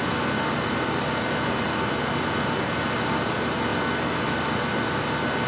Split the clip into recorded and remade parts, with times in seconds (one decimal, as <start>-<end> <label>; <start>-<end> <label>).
0.0-5.5 recorded